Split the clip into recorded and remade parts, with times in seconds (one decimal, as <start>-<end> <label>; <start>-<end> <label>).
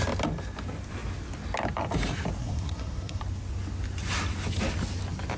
0.0-2.4 recorded; 2.4-3.2 remade; 3.2-5.4 recorded